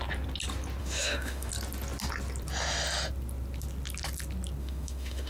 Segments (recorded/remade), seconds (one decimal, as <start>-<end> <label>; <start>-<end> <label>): 0.0-0.8 recorded; 0.8-1.5 remade; 1.5-4.6 recorded; 4.6-5.3 remade